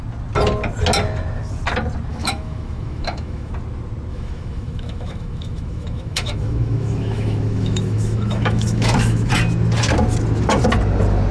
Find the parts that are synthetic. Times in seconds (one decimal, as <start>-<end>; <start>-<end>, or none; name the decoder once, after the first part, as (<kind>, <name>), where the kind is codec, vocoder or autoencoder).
2.1-3.5 (autoencoder, DAC-VAE); 4.1-9.3